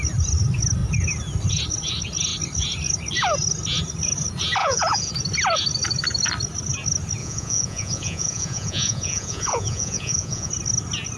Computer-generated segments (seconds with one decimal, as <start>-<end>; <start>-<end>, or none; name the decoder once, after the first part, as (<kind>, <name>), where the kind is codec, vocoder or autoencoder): 4.6-5.1 (vocoder, Vocos); 7.2-10.5